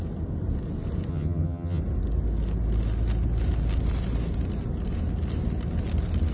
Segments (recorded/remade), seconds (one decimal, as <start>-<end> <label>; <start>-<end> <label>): 0.0-1.1 recorded; 1.1-1.8 remade; 1.8-6.3 recorded